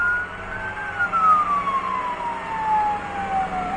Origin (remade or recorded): recorded